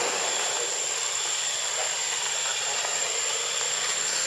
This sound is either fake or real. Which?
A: real